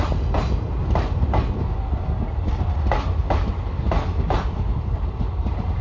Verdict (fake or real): real